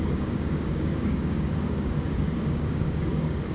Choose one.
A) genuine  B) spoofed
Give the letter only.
B